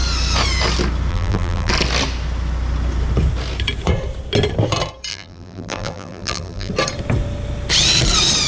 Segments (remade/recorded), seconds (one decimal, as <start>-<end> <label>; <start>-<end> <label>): 0.0-1.1 recorded; 1.1-1.7 remade; 1.7-5.1 recorded; 5.1-6.7 remade; 6.7-8.5 recorded